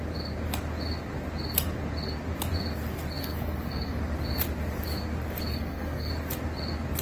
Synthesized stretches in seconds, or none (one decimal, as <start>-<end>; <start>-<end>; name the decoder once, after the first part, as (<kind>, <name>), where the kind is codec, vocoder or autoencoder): 3.2-4.0 (codec, SNAC); 5.5-6.1